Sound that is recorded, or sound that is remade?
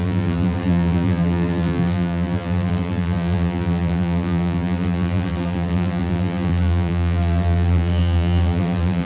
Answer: remade